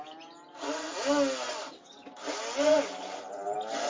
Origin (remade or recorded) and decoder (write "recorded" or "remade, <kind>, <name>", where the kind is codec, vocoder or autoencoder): recorded